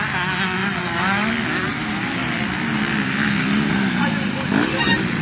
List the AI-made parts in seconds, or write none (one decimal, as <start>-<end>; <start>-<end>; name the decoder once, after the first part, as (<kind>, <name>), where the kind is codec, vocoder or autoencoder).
none